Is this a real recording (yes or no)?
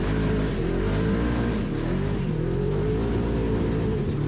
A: yes